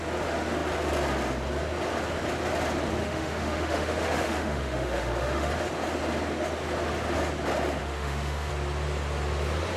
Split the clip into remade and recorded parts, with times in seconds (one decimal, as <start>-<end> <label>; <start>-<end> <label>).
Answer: 0.0-3.0 recorded; 3.0-5.5 remade; 5.5-7.8 recorded; 7.8-8.5 remade; 8.5-9.8 recorded